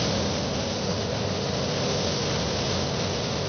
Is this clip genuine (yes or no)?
yes